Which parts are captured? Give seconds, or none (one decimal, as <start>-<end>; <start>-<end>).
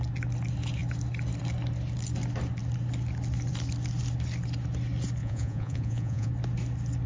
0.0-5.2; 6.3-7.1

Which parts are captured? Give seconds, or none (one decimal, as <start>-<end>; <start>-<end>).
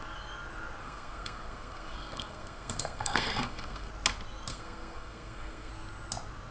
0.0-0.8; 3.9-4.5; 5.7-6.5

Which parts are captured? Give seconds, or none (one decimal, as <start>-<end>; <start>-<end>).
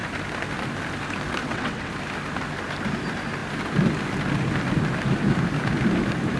0.0-1.4; 1.9-6.4